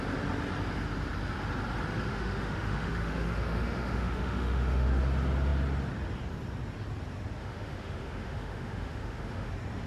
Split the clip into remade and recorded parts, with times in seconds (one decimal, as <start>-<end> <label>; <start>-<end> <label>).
0.0-2.1 recorded; 2.1-5.0 remade; 5.0-7.4 recorded; 7.4-9.5 remade; 9.5-9.9 recorded